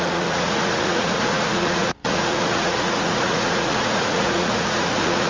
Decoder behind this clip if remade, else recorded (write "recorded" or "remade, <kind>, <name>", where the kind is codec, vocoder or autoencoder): remade, vocoder, Vocos